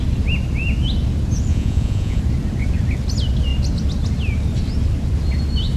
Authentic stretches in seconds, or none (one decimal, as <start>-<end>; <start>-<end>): 0.0-1.5; 2.2-5.8